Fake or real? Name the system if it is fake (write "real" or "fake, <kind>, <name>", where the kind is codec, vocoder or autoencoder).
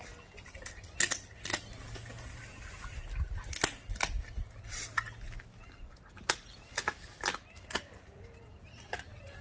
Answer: real